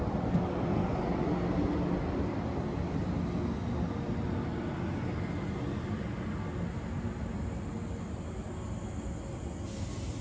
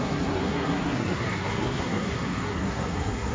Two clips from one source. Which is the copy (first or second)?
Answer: second